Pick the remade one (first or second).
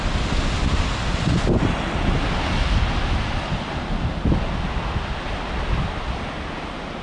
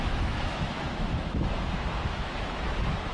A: second